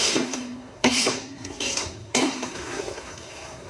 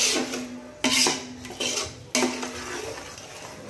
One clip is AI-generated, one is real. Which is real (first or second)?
second